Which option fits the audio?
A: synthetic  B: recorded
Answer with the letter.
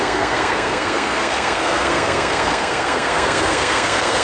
A